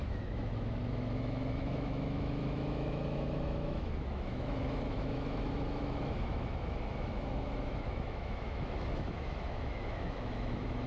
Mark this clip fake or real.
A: fake